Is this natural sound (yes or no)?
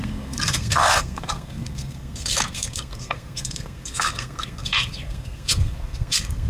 no